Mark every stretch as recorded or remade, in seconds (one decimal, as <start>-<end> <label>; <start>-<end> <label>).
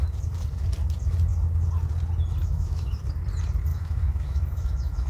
0.0-2.4 recorded; 2.4-3.0 remade; 3.0-3.7 recorded; 3.7-5.1 remade